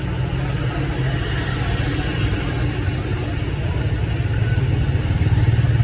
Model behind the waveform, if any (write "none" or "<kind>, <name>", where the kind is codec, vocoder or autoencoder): none